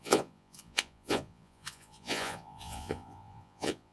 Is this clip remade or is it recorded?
remade